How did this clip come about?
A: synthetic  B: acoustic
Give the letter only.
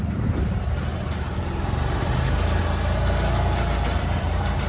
A